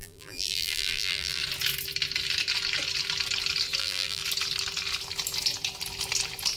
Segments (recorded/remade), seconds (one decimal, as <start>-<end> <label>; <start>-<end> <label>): 0.0-1.4 remade; 1.4-3.8 recorded; 3.8-4.2 remade; 4.2-6.6 recorded